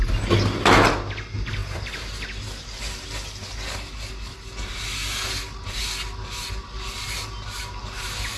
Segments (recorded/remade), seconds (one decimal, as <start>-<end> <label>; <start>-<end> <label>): 0.0-8.4 recorded